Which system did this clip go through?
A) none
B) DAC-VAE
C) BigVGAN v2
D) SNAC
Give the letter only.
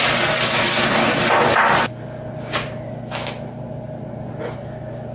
A